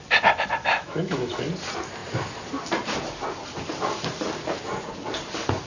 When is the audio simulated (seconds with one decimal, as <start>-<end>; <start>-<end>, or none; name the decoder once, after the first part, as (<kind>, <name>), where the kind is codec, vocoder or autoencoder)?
0.6-1.4 (autoencoder, DAC-VAE)